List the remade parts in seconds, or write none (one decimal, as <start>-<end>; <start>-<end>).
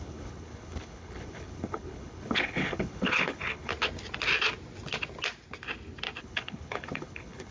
0.0-3.7; 6.2-7.5